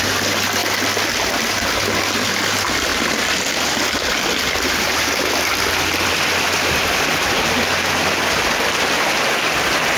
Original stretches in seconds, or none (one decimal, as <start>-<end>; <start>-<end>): 0.0-0.6; 1.5-2.9; 7.0-10.0